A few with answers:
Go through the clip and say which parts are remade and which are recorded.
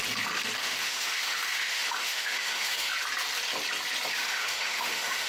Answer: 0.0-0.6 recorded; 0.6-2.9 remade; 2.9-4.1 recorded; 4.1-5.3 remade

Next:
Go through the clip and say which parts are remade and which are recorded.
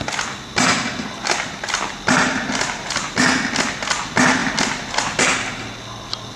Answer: 0.0-6.4 recorded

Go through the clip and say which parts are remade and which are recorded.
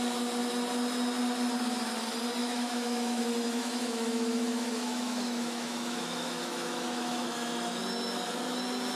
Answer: 0.0-2.4 recorded; 2.4-3.2 remade; 3.2-3.6 recorded; 3.6-7.8 remade; 7.8-9.0 recorded